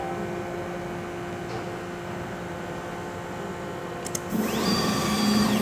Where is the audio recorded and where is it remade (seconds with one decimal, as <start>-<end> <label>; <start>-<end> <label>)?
0.0-5.6 recorded